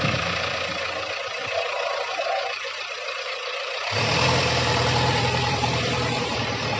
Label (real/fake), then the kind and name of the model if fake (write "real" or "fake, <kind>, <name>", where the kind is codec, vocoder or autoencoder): fake, vocoder, BigVGAN v2